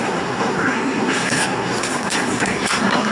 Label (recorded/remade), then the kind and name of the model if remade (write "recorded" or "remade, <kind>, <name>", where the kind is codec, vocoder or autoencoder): remade, codec, SNAC